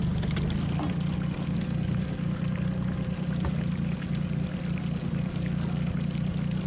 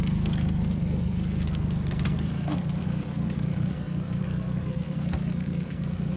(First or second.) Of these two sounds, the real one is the first